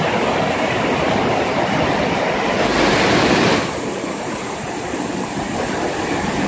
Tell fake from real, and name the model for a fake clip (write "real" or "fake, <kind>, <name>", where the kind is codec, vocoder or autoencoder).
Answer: real